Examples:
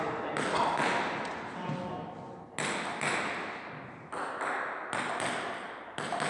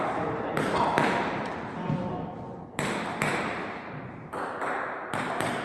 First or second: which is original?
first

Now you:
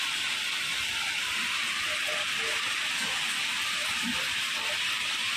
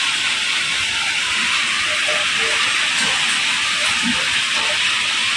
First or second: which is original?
second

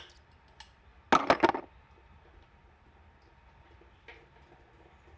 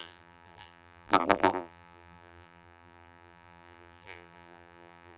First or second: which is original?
first